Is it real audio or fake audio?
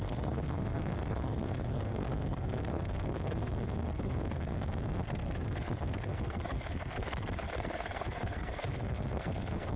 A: fake